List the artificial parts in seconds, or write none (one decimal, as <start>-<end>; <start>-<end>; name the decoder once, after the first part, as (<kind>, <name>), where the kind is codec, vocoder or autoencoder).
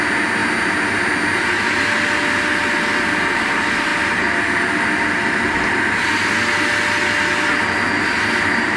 3.9-5.8 (vocoder, BigVGAN v2)